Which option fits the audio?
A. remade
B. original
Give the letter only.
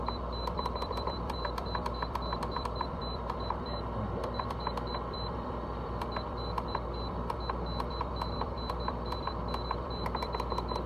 A